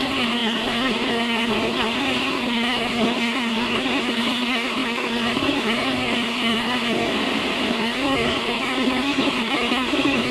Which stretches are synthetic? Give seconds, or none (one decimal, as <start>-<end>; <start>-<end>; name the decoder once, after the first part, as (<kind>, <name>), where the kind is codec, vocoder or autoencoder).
0.0-7.1 (codec, SNAC); 7.7-10.3